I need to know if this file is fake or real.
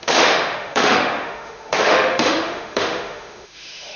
fake